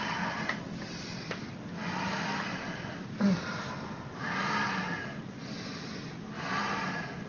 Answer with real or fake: real